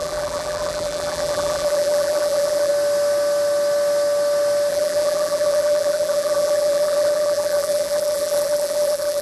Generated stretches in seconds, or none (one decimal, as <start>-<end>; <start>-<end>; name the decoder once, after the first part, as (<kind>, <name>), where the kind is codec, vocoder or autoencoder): 0.0-2.7 (vocoder, BigVGAN v2); 4.7-9.2